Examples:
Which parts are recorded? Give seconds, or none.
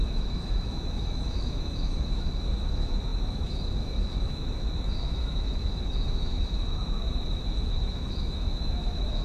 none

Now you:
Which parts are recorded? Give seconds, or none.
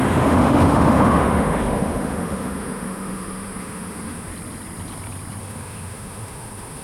4.3-5.4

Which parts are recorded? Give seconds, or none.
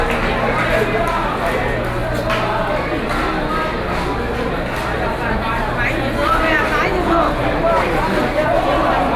0.0-9.2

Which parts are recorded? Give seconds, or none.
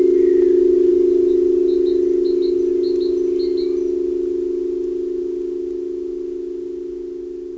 0.0-7.6